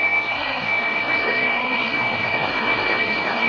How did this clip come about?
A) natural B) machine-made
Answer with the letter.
B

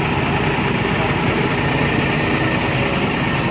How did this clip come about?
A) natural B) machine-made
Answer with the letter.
A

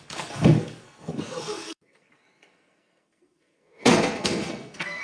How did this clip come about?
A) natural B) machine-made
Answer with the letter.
B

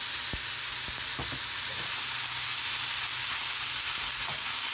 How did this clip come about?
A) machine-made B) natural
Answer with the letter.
B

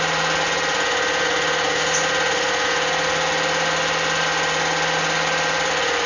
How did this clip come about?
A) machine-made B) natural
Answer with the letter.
B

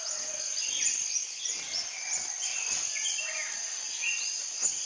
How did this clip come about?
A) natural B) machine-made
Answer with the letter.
A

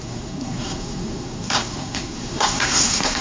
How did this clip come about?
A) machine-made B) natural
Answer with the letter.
A